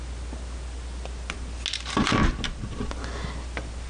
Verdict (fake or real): real